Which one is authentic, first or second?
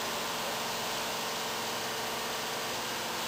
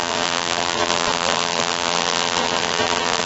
first